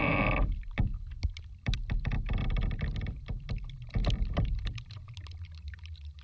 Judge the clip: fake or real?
real